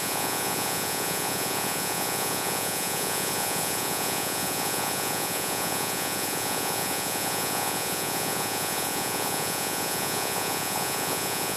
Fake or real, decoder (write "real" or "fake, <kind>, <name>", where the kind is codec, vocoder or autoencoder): fake, vocoder, Vocos